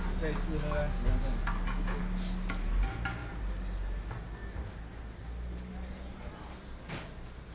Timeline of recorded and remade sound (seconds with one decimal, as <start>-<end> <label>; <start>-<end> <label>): 0.0-7.5 recorded